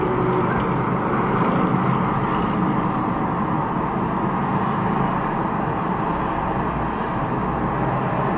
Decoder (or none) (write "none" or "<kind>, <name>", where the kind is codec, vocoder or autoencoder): none